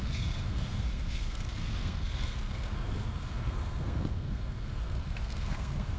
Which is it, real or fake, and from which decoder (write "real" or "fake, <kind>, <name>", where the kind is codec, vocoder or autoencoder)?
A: fake, codec, SNAC